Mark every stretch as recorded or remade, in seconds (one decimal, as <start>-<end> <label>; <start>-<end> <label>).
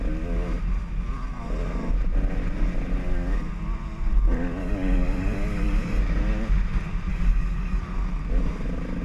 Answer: 0.0-4.6 recorded; 4.6-6.0 remade; 6.0-7.1 recorded; 7.1-7.8 remade; 7.8-9.0 recorded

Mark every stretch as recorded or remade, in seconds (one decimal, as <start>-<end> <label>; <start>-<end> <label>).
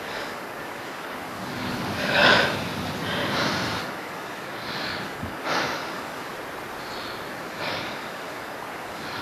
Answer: 0.0-2.4 remade; 2.4-3.8 recorded; 3.8-6.3 remade; 6.3-7.3 recorded; 7.3-9.2 remade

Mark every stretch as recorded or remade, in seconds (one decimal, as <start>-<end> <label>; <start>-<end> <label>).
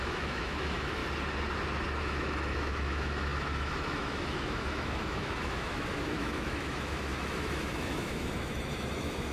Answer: 0.0-1.0 remade; 1.0-2.0 recorded; 2.0-9.3 remade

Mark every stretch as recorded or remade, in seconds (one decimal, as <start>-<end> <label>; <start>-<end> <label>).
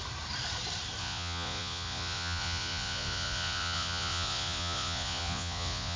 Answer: 0.0-1.0 recorded; 1.0-6.0 remade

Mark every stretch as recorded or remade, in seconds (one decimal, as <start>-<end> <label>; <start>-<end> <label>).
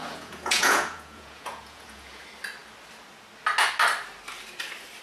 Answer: 0.0-2.2 remade; 2.2-5.0 recorded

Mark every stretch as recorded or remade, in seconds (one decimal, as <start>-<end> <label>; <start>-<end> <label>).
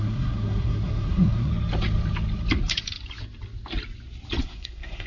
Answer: 0.0-1.5 remade; 1.5-4.4 recorded; 4.4-5.1 remade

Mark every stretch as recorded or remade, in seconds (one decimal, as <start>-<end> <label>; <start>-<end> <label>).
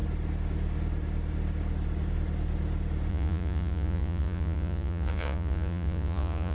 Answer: 0.0-3.1 recorded; 3.1-6.5 remade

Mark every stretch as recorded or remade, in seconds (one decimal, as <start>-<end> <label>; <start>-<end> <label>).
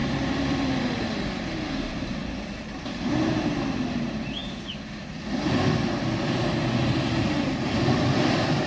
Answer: 0.0-8.7 recorded